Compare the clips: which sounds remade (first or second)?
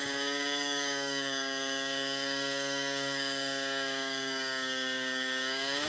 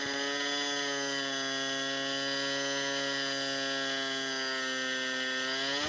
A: first